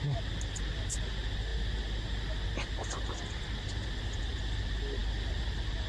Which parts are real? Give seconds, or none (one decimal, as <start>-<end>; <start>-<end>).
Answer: 0.0-5.9